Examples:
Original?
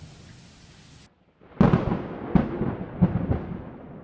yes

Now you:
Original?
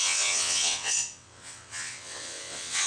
no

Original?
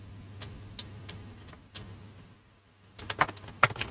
yes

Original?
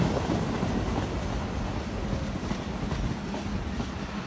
yes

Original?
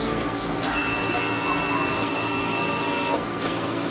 no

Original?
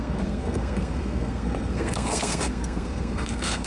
no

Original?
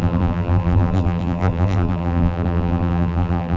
no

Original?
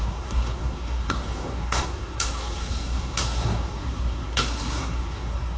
no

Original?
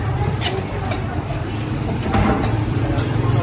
no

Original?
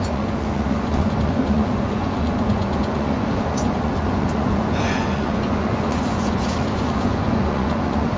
no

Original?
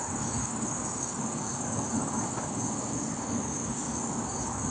no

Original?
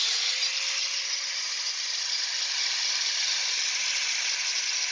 yes